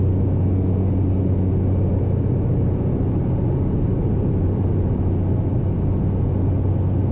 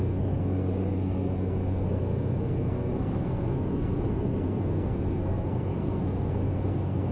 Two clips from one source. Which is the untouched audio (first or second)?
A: first